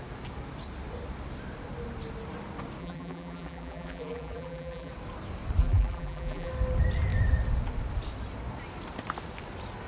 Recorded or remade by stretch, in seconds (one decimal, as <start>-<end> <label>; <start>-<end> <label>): 0.0-2.8 recorded; 2.8-4.9 remade; 4.9-5.6 recorded; 5.6-6.5 remade; 6.5-9.9 recorded

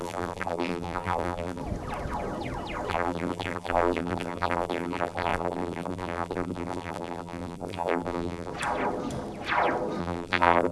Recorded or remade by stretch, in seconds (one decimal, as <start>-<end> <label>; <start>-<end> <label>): 0.0-1.6 remade; 1.6-2.9 recorded; 2.9-8.5 remade; 8.5-10.0 recorded; 10.0-10.7 remade

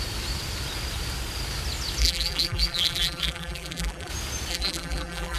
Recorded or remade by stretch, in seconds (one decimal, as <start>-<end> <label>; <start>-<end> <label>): 0.0-2.0 recorded; 2.0-4.1 remade; 4.1-4.5 recorded; 4.5-5.4 remade